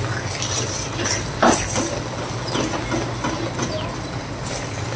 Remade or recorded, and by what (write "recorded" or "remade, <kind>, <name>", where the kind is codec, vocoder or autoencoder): recorded